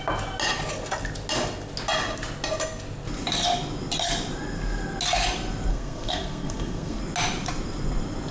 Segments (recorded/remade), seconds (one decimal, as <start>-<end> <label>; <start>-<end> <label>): 0.0-5.7 recorded; 5.7-7.0 remade; 7.0-8.3 recorded